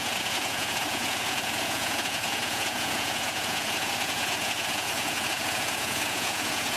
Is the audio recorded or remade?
remade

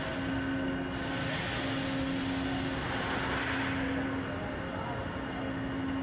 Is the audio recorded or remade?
recorded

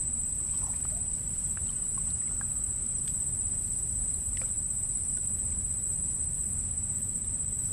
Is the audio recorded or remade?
recorded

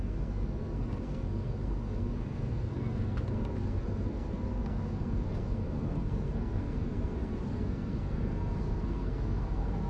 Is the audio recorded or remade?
remade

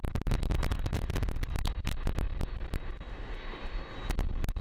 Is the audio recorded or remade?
recorded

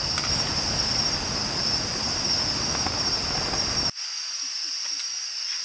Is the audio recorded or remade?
recorded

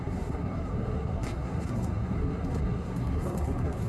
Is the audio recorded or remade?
remade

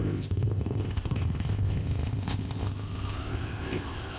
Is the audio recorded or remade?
remade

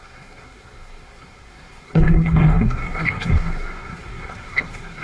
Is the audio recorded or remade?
remade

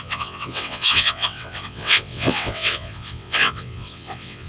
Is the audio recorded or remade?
remade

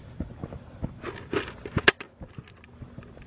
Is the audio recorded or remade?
recorded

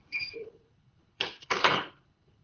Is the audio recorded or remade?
remade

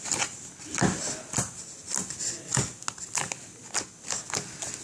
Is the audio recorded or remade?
recorded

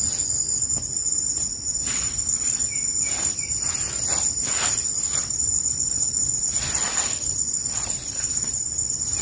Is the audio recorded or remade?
recorded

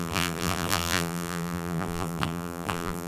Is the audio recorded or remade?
remade